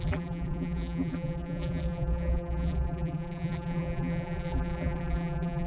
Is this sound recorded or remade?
remade